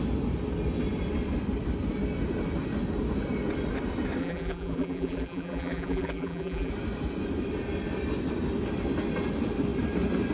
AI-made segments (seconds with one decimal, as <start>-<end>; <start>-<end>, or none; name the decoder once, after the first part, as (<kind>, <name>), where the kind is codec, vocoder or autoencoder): 4.2-6.7 (vocoder, BigVGAN v2)